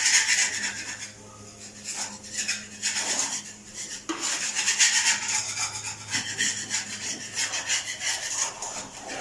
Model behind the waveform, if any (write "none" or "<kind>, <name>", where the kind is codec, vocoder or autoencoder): none